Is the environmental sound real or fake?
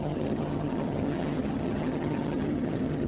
fake